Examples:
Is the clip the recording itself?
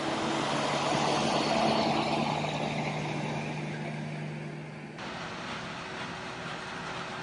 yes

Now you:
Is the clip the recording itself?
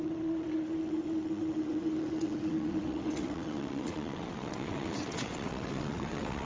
no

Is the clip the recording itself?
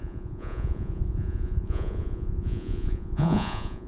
no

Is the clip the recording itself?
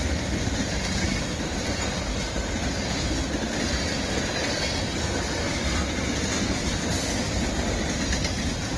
yes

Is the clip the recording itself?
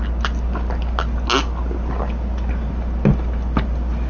yes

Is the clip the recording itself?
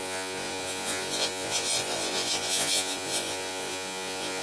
no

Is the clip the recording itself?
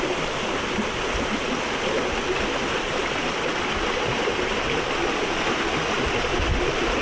yes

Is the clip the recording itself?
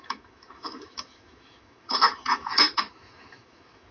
no